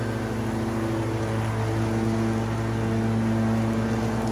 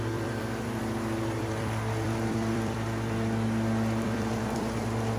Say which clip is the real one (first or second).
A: first